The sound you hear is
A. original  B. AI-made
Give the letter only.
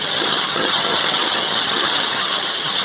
B